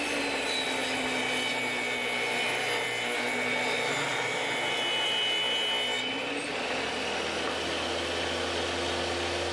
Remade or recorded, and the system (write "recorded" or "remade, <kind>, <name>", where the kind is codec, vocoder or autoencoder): recorded